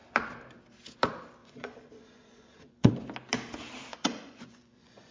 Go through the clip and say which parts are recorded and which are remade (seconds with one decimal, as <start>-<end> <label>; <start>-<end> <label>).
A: 0.0-1.4 recorded; 1.4-2.9 remade; 2.9-3.9 recorded; 3.9-5.1 remade